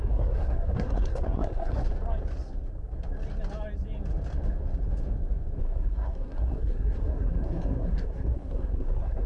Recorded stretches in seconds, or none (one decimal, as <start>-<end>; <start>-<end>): 1.8-5.6